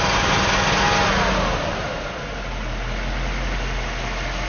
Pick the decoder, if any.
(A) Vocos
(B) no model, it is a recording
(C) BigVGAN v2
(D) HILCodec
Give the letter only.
B